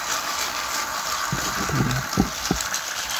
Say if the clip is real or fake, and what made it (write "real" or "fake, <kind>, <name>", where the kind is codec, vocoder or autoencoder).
real